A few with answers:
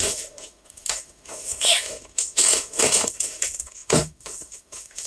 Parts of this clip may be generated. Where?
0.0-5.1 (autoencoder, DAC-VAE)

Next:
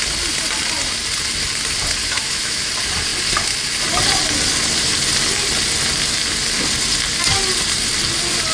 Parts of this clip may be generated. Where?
2.0-2.7 (autoencoder, DAC-VAE)

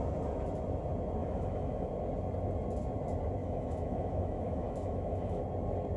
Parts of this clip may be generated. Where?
1.2-1.9 (autoencoder, DAC-VAE); 3.4-5.4